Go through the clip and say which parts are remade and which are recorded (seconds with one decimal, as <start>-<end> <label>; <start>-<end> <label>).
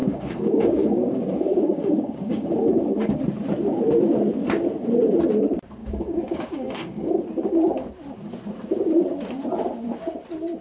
0.0-3.2 remade; 3.2-5.8 recorded; 5.8-7.2 remade; 7.2-10.6 recorded